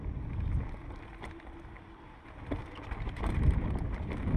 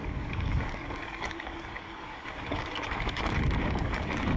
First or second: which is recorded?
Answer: first